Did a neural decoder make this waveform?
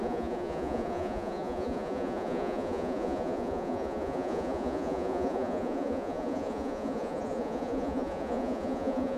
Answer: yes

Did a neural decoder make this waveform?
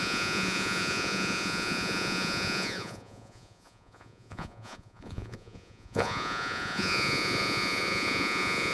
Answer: yes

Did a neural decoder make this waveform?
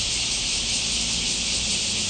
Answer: no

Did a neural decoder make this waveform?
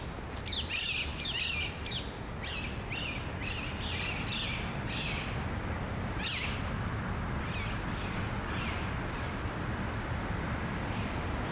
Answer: no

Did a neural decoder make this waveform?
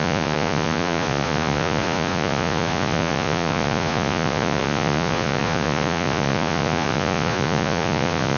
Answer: yes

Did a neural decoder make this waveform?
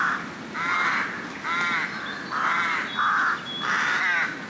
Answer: no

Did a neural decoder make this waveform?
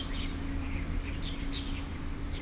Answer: no